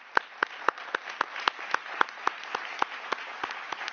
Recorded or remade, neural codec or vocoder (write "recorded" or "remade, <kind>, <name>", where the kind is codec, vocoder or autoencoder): recorded